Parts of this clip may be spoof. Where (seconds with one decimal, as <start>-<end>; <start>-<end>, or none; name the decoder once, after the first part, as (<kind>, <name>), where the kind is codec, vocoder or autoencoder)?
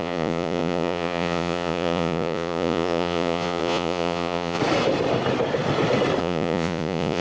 0.0-4.6 (vocoder, Vocos); 6.2-7.2